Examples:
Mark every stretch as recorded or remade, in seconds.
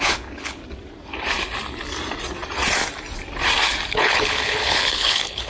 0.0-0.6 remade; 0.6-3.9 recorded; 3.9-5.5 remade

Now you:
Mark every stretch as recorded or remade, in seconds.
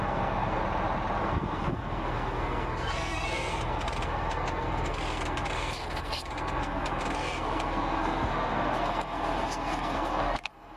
0.0-0.6 remade; 0.6-1.2 recorded; 1.2-10.8 remade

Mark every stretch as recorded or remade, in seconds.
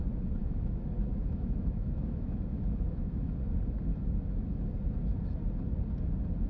0.0-0.4 recorded; 0.4-3.3 remade; 3.3-3.9 recorded; 3.9-4.7 remade; 4.7-6.5 recorded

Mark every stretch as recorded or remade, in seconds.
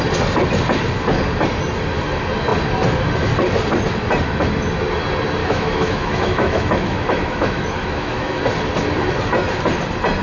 0.0-5.4 recorded; 5.4-8.4 remade; 8.4-10.2 recorded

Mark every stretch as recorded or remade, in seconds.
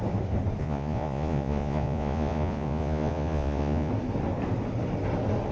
0.0-0.6 recorded; 0.6-3.9 remade; 3.9-5.5 recorded